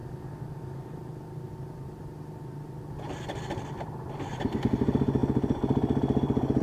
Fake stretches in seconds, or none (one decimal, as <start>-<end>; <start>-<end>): none

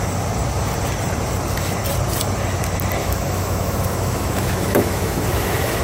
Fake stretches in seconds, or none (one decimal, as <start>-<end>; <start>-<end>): 3.0-5.8

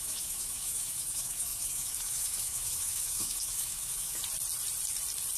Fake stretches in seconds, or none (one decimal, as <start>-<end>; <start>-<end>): 0.0-4.2

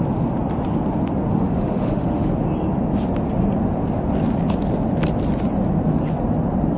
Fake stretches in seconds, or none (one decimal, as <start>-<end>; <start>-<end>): 1.3-2.3

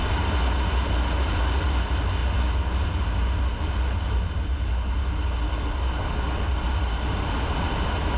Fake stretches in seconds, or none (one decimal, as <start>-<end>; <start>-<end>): none

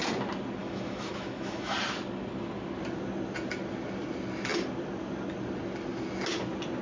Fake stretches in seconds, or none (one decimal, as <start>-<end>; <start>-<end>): 0.6-1.7